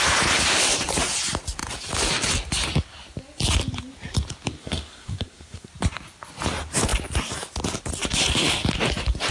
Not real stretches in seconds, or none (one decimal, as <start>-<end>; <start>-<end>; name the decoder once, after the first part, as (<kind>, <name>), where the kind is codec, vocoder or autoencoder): 4.6-5.7 (codec, SNAC)